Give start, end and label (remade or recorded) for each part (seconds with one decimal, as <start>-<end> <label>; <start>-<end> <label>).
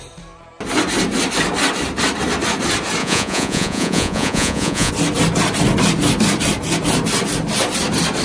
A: 0.0-3.0 recorded; 3.0-4.9 remade; 4.9-8.2 recorded